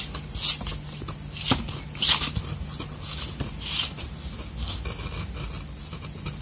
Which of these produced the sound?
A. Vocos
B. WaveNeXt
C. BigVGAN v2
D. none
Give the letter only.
D